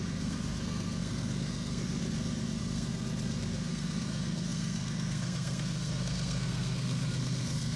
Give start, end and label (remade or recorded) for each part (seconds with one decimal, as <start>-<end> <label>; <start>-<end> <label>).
0.0-7.8 remade